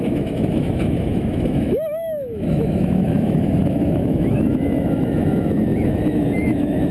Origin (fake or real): fake